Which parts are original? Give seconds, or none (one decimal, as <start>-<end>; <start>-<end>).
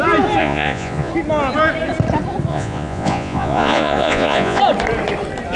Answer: 0.0-0.4; 1.1-2.5; 4.6-5.6